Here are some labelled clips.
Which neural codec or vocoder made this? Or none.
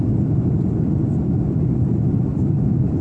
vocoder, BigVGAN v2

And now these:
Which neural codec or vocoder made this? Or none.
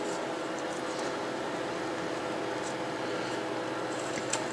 none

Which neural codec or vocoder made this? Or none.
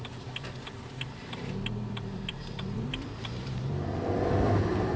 vocoder, BigVGAN v2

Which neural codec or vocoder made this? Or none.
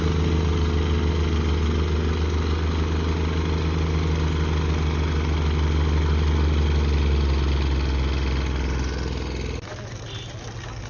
none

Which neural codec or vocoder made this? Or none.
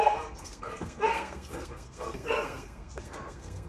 codec, SNAC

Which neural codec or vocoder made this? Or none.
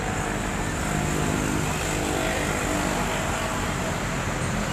none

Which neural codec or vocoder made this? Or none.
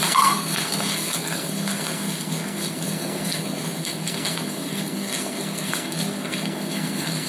codec, SNAC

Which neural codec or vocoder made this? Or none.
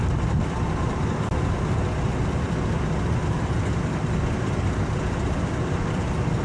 none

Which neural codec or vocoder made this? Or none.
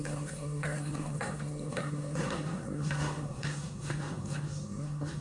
codec, SNAC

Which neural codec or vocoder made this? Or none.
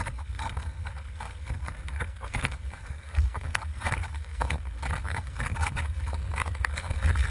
codec, SNAC